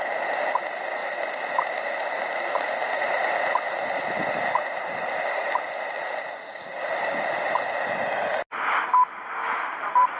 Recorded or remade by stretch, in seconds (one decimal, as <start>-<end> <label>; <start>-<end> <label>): 0.0-1.0 recorded; 1.0-2.4 remade; 2.4-9.4 recorded; 9.4-10.2 remade